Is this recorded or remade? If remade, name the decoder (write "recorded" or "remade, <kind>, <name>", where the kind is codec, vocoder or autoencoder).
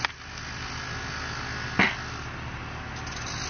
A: recorded